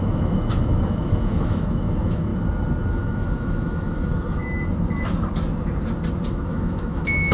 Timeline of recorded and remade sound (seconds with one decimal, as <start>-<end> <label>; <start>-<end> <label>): 0.0-2.3 remade; 2.3-2.9 recorded; 2.9-4.4 remade; 4.4-6.3 recorded; 6.3-7.3 remade